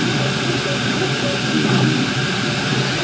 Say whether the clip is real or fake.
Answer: fake